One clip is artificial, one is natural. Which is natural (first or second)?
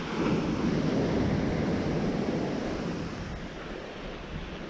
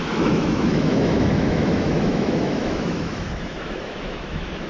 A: first